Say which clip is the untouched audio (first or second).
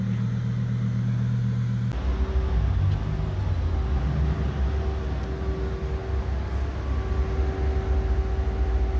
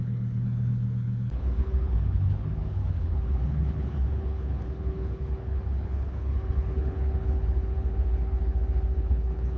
first